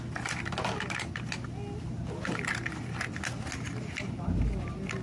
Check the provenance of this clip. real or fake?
real